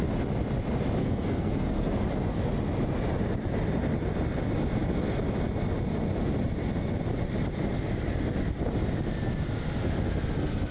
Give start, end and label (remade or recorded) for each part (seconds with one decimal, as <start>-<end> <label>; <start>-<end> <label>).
0.0-1.0 recorded; 1.0-1.9 remade; 1.9-10.7 recorded